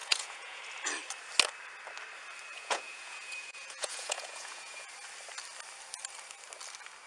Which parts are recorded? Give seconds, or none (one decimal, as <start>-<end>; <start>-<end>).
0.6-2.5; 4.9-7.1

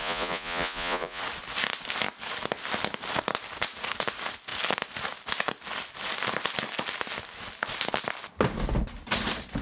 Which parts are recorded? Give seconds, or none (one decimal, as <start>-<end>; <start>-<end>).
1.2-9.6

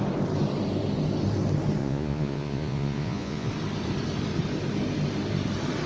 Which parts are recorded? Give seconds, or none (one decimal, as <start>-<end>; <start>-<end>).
0.0-1.8; 3.5-5.9

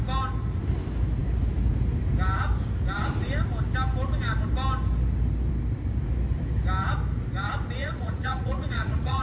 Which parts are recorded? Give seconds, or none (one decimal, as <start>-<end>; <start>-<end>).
0.0-7.8

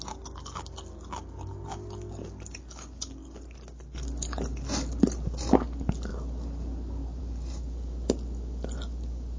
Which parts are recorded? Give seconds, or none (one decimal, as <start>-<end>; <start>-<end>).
0.0-9.4

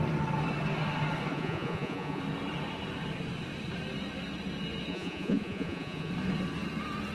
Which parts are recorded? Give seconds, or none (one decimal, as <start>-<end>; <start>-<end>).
0.0-1.3; 2.2-4.9; 6.1-7.1